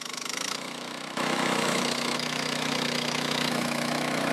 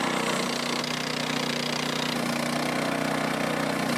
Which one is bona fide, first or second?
second